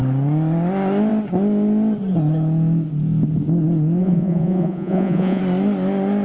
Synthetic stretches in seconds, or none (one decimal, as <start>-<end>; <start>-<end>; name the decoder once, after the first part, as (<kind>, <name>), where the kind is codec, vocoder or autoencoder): 4.0-5.4 (vocoder, Vocos)